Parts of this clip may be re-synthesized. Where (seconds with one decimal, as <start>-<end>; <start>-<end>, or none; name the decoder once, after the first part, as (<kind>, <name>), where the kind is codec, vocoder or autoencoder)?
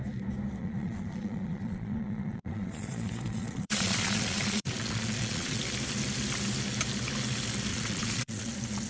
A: 0.6-5.6 (vocoder, Vocos); 7.7-8.5